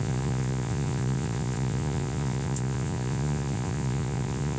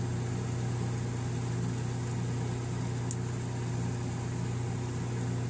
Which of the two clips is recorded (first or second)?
second